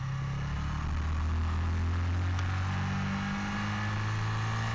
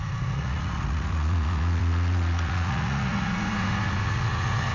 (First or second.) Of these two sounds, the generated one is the second